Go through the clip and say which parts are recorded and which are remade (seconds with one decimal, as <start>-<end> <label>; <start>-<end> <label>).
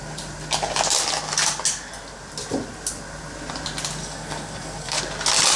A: 0.0-4.0 recorded; 4.0-5.0 remade; 5.0-5.6 recorded